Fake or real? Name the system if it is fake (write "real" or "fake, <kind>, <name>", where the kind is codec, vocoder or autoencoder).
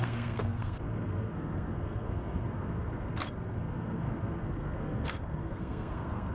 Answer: fake, codec, SNAC